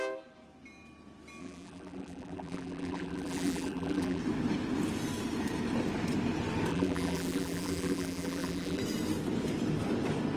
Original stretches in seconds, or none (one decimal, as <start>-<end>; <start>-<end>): 0.0-1.4; 4.2-6.7; 8.8-10.4